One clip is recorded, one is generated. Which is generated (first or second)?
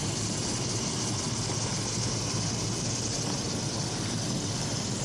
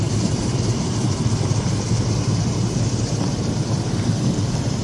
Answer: second